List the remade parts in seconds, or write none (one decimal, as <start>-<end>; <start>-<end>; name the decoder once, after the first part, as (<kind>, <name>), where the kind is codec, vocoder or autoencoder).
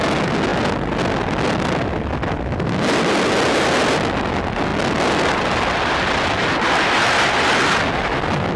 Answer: none